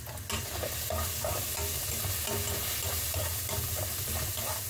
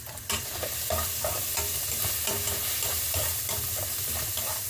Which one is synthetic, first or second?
second